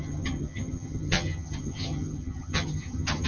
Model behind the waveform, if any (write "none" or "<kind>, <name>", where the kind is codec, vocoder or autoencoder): vocoder, HiFi-GAN